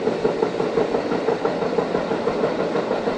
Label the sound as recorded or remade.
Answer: recorded